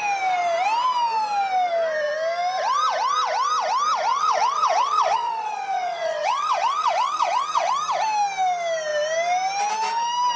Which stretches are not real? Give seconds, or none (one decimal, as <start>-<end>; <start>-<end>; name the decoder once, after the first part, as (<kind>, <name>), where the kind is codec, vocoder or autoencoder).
4.1-7.7 (vocoder, WaveNeXt)